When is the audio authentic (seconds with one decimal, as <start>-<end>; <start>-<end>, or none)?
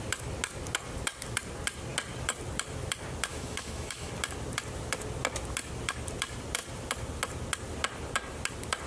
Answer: 0.0-3.3; 4.1-8.9